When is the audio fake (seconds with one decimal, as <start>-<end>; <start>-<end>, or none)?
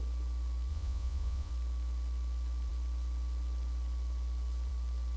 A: 0.7-1.5